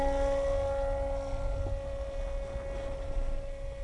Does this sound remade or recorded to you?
recorded